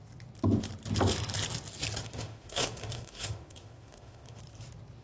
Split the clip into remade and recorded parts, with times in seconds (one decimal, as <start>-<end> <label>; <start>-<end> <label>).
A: 0.0-2.0 recorded; 2.0-4.4 remade; 4.4-5.0 recorded